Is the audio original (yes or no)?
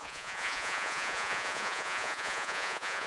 no